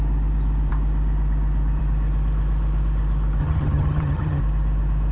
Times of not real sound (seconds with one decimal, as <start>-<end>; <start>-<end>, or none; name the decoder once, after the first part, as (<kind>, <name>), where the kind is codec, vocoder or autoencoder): 3.4-4.4 (vocoder, HiFi-GAN)